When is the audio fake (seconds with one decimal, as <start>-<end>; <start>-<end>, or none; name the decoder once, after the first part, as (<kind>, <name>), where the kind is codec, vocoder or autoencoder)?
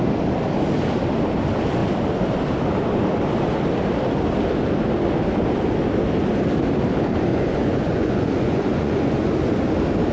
7.3-9.3 (vocoder, Vocos)